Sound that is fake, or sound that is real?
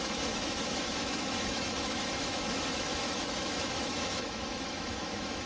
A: fake